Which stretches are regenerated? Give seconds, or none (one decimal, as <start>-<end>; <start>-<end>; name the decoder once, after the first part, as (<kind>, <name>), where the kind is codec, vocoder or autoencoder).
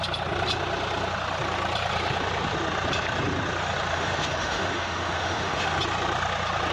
3.9-5.8 (autoencoder, DAC-VAE)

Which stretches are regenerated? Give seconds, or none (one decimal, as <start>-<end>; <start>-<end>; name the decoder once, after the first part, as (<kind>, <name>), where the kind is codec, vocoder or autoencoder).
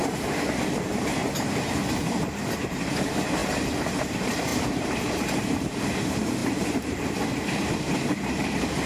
0.0-1.2 (vocoder, BigVGAN v2); 1.9-3.4; 4.0-8.9